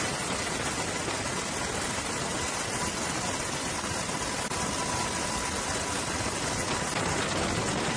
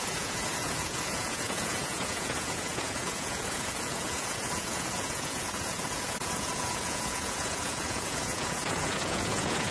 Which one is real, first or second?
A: first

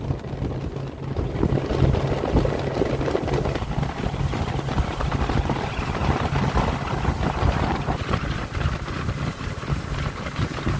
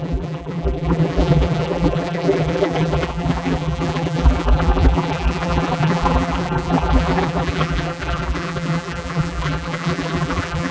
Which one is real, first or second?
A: first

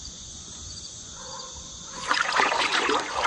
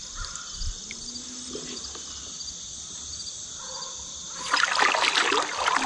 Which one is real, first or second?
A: second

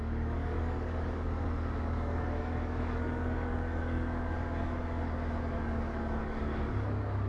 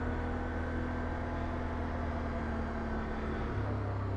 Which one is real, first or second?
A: second